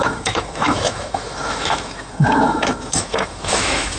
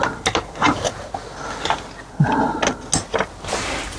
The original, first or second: second